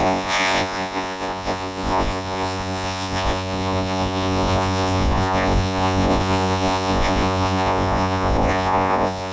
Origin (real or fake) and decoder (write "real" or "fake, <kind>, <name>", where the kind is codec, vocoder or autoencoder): fake, vocoder, Vocos